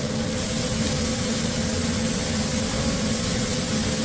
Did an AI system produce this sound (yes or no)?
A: no